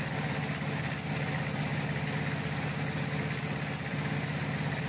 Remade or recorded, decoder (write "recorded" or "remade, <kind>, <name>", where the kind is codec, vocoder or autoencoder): recorded